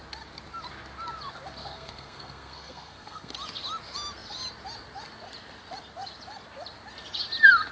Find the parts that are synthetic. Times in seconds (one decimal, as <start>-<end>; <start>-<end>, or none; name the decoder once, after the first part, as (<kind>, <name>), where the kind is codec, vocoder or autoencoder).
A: 1.6-3.3 (codec, SNAC)